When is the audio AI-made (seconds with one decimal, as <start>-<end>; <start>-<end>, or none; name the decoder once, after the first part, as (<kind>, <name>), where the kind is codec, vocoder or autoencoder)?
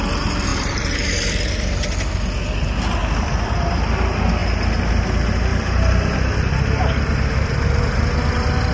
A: 0.5-1.5 (vocoder, BigVGAN v2); 3.0-3.5; 5.5-7.8